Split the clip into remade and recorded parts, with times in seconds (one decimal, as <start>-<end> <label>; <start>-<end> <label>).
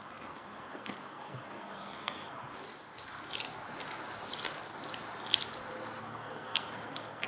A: 0.0-2.5 remade; 2.5-6.0 recorded; 6.0-7.3 remade